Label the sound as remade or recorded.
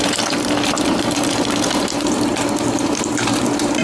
remade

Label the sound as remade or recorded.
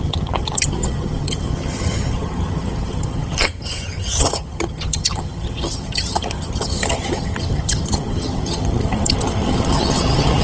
remade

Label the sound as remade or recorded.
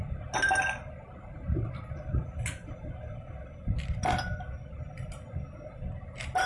recorded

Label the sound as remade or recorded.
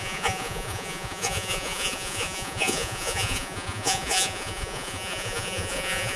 remade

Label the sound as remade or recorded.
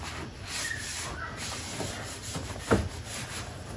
recorded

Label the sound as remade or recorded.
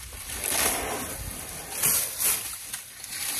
recorded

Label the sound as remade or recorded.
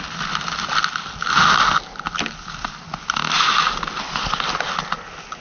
recorded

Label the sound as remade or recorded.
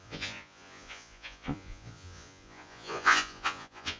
remade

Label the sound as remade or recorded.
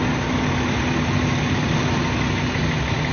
recorded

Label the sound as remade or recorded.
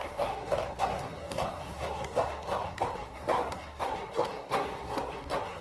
remade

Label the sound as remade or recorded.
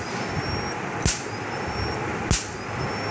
recorded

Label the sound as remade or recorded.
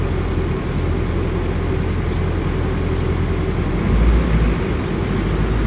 recorded